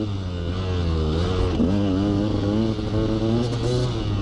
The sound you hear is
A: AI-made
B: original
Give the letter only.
B